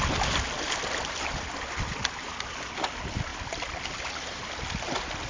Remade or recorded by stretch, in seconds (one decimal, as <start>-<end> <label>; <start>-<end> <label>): 0.0-5.3 recorded